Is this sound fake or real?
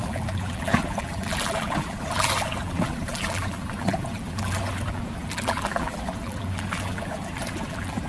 fake